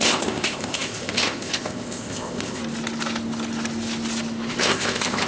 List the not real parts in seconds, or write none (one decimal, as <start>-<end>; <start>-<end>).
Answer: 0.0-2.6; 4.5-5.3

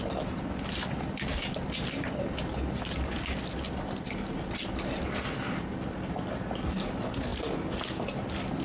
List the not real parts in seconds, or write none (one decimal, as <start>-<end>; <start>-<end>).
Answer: none

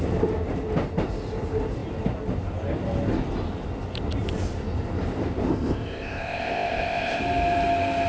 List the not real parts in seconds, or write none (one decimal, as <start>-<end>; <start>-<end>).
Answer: 5.5-7.2